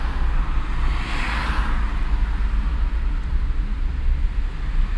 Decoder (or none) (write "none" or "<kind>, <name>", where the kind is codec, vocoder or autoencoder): none